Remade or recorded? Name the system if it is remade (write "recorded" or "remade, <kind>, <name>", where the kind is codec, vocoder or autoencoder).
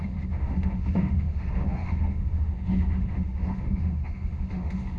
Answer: remade, autoencoder, DAC-VAE